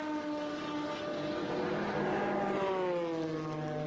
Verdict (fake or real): real